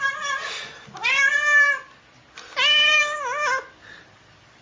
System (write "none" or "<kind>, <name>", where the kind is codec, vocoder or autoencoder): vocoder, BigVGAN v2